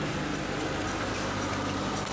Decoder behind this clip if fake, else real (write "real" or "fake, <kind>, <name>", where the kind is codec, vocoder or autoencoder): real